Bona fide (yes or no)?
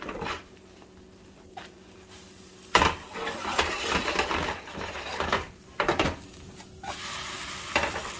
no